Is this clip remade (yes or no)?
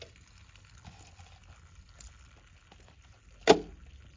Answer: no